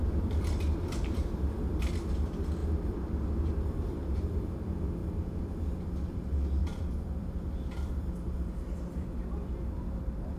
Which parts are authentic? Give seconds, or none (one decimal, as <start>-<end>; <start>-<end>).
none